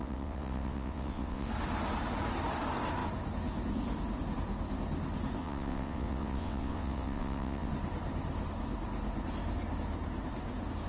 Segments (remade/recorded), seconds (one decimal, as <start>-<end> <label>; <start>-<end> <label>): 0.0-1.5 remade; 1.5-5.4 recorded; 5.4-7.7 remade; 7.7-10.9 recorded